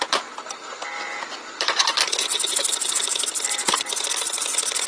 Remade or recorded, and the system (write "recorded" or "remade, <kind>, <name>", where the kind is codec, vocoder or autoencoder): recorded